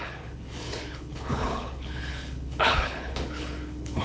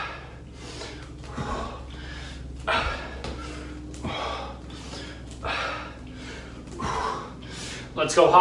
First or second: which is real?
second